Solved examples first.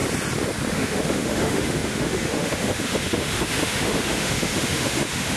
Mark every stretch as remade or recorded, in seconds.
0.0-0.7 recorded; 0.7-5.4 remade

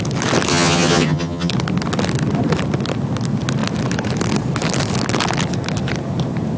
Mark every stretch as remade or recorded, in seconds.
0.0-0.5 recorded; 0.5-1.5 remade; 1.5-6.6 recorded

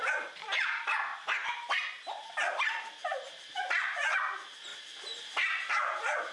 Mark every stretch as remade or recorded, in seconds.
0.0-6.3 recorded

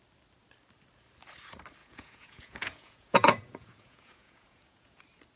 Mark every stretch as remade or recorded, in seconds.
0.0-1.8 recorded; 1.8-5.0 remade; 5.0-5.4 recorded

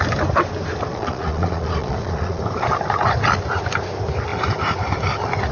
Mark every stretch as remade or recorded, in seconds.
0.0-0.9 recorded; 0.9-2.4 remade; 2.4-5.5 recorded

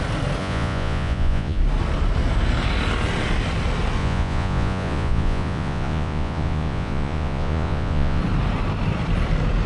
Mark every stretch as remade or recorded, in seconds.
0.0-0.4 recorded; 0.4-1.6 remade; 1.6-4.0 recorded; 4.0-8.2 remade; 8.2-9.7 recorded

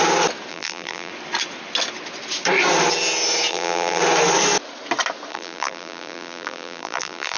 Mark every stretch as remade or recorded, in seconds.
0.0-0.5 recorded; 0.5-1.1 remade; 1.1-3.5 recorded; 3.5-4.0 remade; 4.0-5.3 recorded; 5.3-7.4 remade